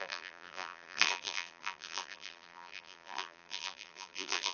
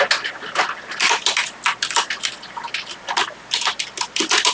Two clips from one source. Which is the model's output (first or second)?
first